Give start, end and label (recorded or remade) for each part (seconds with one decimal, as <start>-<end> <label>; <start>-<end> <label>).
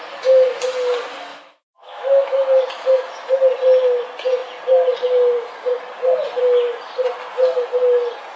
0.0-1.3 recorded; 1.3-2.6 remade; 2.6-8.4 recorded